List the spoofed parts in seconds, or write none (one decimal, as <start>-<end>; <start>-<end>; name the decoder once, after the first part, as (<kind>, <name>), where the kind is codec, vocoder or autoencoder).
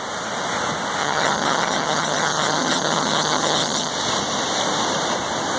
1.0-3.9 (vocoder, HiFi-GAN)